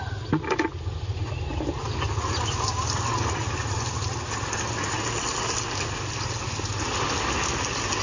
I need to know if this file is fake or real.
real